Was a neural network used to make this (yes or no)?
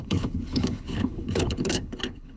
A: yes